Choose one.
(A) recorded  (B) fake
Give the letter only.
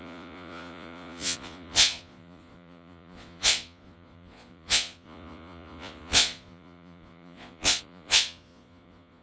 B